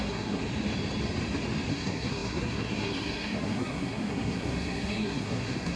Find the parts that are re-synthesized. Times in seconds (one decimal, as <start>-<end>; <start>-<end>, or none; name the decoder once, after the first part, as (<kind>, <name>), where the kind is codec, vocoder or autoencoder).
0.0-0.4 (codec, SNAC); 1.7-5.8